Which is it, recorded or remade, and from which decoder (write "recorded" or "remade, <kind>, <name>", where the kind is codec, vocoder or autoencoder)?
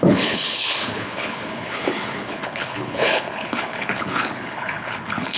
remade, codec, HILCodec